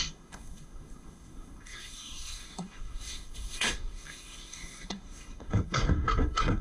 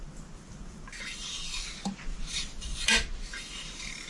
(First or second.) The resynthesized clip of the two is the first